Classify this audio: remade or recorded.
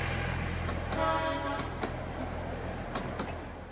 recorded